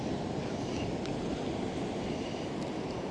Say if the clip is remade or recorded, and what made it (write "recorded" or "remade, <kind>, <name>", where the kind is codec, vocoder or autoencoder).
recorded